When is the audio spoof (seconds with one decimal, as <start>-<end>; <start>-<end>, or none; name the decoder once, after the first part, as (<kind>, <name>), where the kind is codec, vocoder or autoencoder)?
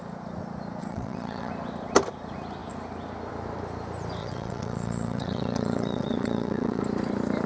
0.8-1.5 (vocoder, WaveNeXt); 4.2-6.8